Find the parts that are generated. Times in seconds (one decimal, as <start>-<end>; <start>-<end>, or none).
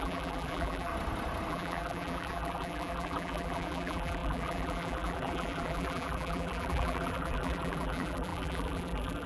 0.0-0.9; 1.5-9.3